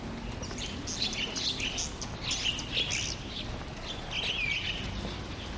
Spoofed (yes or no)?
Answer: no